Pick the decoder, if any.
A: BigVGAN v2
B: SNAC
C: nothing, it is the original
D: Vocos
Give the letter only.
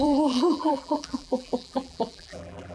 A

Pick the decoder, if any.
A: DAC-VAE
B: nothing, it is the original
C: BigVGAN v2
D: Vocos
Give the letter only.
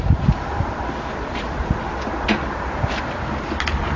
B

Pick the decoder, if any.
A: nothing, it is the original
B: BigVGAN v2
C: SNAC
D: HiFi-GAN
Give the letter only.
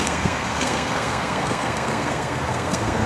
C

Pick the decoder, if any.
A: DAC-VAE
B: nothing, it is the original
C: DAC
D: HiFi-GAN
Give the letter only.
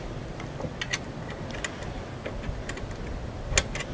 B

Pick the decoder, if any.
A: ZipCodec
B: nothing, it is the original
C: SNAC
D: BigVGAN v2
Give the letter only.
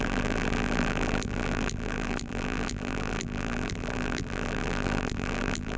D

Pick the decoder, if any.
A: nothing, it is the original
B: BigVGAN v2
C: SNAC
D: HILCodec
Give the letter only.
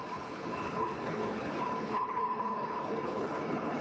D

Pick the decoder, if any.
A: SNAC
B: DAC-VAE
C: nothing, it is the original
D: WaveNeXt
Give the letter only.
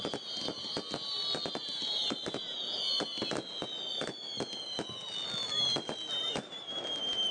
C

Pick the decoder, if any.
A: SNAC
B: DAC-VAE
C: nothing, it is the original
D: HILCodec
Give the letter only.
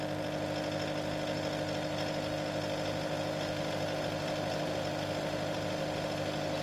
C